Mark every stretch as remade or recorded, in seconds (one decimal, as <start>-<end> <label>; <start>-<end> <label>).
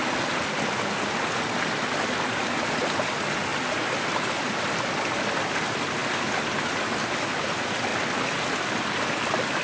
0.0-9.6 recorded